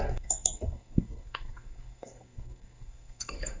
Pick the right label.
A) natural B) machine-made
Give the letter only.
B